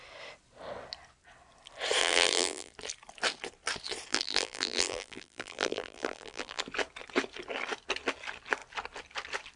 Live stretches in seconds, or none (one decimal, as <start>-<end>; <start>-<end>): 0.0-2.0; 2.7-4.1; 6.6-9.6